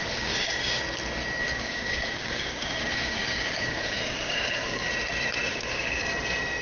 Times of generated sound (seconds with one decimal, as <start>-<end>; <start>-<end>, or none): 0.0-0.8; 1.4-4.9; 5.5-6.1